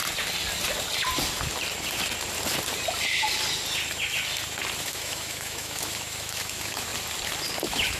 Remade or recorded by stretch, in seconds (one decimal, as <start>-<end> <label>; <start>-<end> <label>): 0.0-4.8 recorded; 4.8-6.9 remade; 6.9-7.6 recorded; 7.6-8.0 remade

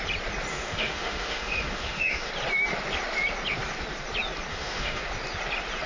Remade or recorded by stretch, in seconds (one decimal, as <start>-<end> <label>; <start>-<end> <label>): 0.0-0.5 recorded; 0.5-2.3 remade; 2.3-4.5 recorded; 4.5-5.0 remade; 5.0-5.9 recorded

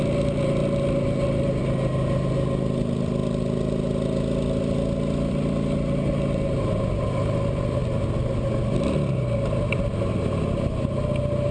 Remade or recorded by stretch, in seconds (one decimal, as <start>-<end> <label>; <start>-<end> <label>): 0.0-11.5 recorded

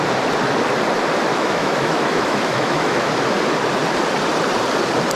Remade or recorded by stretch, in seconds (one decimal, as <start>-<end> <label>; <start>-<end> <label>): 0.0-1.3 recorded; 1.3-3.1 remade; 3.1-5.2 recorded

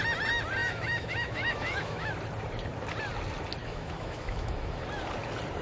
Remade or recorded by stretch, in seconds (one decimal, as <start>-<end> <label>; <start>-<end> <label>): 0.0-0.6 recorded; 0.6-2.1 remade; 2.1-3.6 recorded; 3.6-4.8 remade; 4.8-5.6 recorded